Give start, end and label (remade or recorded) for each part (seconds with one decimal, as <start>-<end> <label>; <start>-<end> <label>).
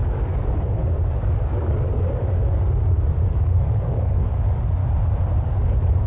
0.0-2.4 remade; 2.4-3.2 recorded; 3.2-4.8 remade; 4.8-5.4 recorded; 5.4-6.1 remade